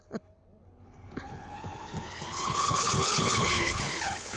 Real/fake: fake